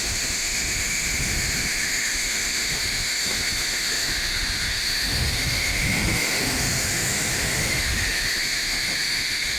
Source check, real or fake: fake